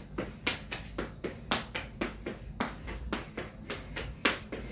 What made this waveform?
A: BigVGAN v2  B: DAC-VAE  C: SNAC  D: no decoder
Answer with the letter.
D